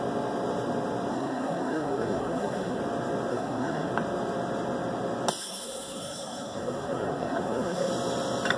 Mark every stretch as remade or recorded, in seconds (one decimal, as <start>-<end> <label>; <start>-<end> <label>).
0.0-1.1 recorded; 1.1-2.8 remade; 2.8-3.3 recorded; 3.3-3.9 remade; 3.9-5.4 recorded; 5.4-7.9 remade; 7.9-8.6 recorded